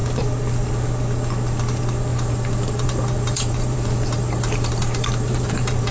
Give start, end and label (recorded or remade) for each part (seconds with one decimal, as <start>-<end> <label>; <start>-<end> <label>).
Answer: 0.0-2.1 recorded; 2.1-5.9 remade